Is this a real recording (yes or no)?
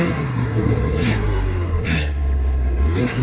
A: no